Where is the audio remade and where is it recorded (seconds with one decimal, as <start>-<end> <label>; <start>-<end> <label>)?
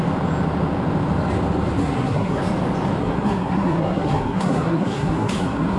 0.0-1.8 recorded; 1.8-2.4 remade; 2.4-3.0 recorded; 3.0-5.8 remade